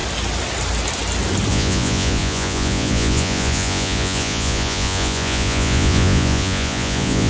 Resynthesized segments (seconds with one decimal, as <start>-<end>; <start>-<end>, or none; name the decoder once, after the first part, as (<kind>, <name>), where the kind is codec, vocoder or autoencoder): 1.5-7.3 (vocoder, Vocos)